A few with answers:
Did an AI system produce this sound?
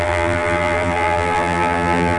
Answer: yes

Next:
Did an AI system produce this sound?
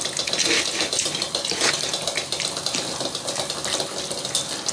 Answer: no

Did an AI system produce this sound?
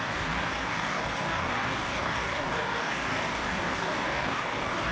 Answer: yes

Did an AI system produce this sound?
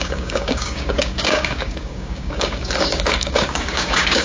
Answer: yes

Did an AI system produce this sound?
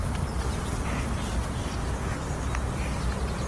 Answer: no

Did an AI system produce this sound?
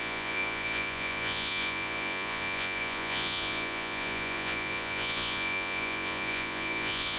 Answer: yes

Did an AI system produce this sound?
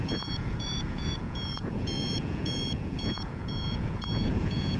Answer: yes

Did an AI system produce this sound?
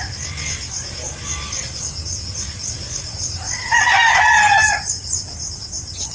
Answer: no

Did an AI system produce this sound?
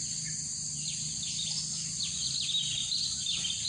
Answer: no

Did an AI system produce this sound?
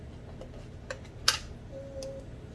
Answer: no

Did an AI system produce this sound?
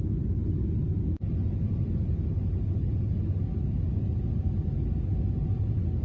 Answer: no